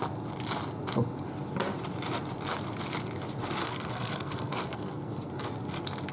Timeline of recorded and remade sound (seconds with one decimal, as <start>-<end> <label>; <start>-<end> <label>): 0.0-3.6 recorded; 3.6-5.3 remade; 5.3-6.1 recorded